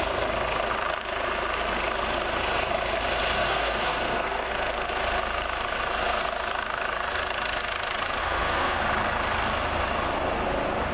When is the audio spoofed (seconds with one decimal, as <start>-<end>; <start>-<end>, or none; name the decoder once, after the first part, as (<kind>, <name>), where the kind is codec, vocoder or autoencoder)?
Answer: 3.4-4.5 (codec, SNAC); 8.2-8.8